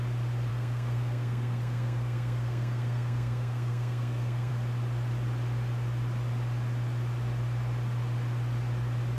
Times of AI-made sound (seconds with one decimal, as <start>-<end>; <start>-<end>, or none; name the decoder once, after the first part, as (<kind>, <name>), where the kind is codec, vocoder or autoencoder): 0.5-4.5 (codec, SNAC)